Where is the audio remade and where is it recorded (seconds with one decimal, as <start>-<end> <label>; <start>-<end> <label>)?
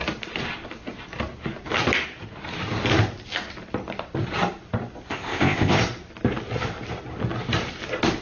0.0-5.1 recorded; 5.1-5.8 remade; 5.8-8.2 recorded